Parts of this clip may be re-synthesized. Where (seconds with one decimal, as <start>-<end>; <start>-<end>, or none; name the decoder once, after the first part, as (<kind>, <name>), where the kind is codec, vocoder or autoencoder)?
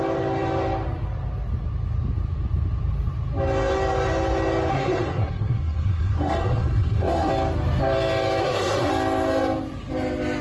4.7-7.3 (codec, SNAC); 8.4-8.9